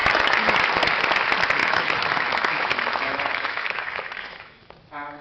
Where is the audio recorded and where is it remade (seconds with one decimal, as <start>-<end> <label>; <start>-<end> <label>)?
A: 0.0-0.6 remade; 0.6-1.6 recorded; 1.6-4.7 remade; 4.7-5.2 recorded